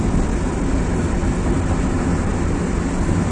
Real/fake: real